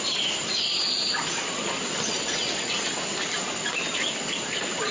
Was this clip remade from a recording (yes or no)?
no